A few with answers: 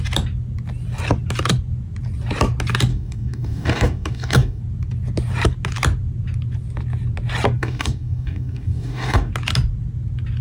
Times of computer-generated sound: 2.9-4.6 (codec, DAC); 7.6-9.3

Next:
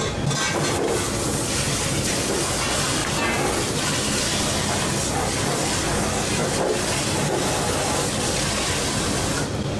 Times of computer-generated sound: none